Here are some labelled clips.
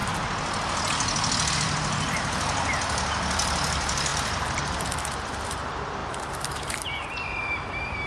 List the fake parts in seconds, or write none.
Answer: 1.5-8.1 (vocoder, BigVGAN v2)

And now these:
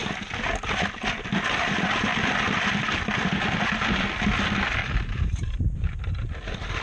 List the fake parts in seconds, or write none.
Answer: 4.8-6.3 (vocoder, BigVGAN v2)

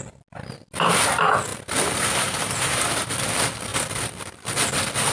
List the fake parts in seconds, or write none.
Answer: 1.5-3.1 (vocoder, BigVGAN v2)

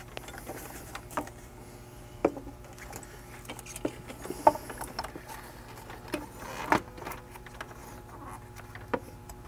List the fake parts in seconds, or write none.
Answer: 0.5-1.5 (vocoder, BigVGAN v2)

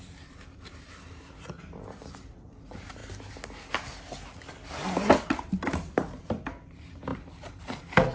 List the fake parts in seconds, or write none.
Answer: 0.0-3.0 (vocoder, BigVGAN v2); 5.3-8.1

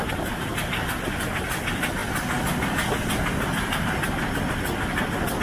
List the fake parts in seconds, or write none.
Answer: 0.0-0.5 (vocoder, BigVGAN v2); 1.5-2.0

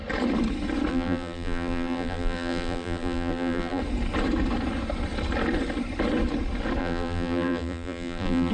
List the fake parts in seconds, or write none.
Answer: 0.9-3.8 (vocoder, BigVGAN v2); 6.8-8.5

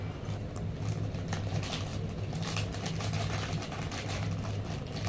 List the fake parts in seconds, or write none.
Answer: none